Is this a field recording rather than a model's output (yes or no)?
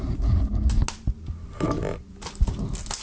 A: yes